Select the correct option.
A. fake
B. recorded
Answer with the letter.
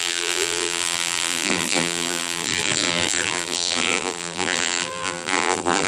A